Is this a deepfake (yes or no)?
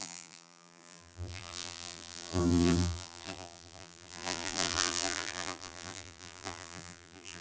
yes